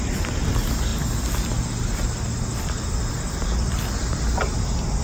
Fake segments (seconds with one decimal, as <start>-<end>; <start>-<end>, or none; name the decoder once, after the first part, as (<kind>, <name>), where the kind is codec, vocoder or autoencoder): none